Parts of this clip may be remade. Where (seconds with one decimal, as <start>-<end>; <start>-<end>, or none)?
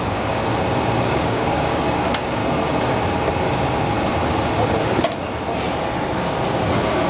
0.0-0.4; 1.0-2.4